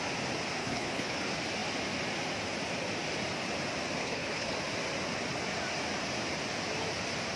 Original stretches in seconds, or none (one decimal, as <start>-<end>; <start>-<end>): 0.0-0.6; 1.2-4.0; 4.5-7.4